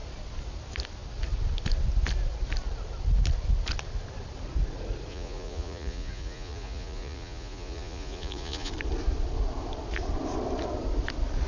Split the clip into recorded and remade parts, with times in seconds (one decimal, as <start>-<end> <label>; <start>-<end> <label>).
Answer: 0.0-5.1 recorded; 5.1-8.7 remade; 8.7-11.5 recorded